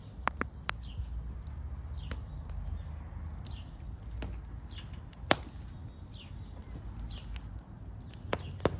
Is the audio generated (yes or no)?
no